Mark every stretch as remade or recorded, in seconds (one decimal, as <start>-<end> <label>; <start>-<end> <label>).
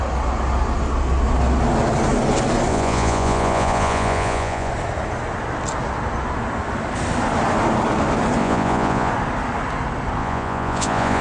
0.0-2.7 recorded; 2.7-4.7 remade; 4.7-8.4 recorded; 8.4-9.1 remade; 9.1-10.2 recorded; 10.2-11.2 remade